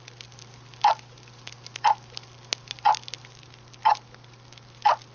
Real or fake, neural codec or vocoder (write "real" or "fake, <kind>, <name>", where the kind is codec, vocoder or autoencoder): real